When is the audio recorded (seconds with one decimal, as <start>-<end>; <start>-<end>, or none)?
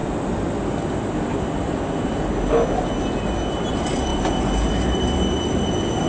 0.0-6.1